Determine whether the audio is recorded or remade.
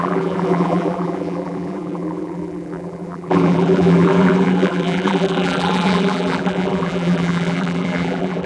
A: remade